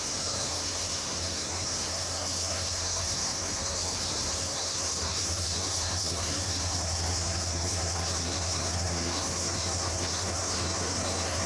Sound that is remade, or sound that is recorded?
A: remade